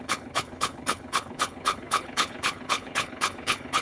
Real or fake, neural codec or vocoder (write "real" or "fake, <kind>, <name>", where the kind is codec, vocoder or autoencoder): fake, codec, HILCodec